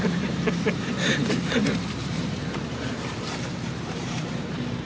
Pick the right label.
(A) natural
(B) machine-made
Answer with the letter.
B